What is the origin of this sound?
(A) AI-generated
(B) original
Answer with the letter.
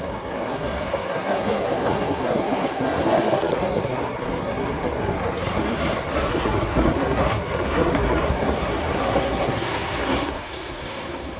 A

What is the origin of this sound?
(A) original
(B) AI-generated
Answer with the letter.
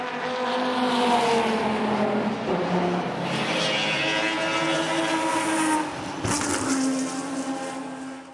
A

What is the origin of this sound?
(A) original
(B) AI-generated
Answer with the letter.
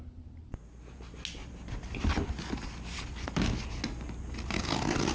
A